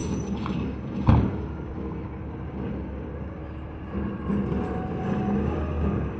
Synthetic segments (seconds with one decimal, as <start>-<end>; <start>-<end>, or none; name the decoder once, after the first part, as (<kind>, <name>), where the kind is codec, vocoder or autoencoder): 0.0-3.4 (codec, DAC); 5.0-6.2